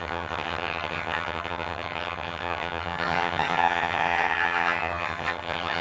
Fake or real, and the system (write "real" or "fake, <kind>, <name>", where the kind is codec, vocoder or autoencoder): fake, vocoder, HiFi-GAN